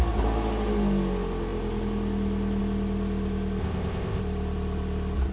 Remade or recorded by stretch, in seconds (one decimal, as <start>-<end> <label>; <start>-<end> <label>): 0.0-3.6 recorded; 3.6-4.2 remade; 4.2-5.3 recorded